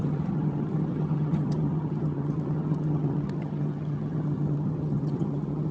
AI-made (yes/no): yes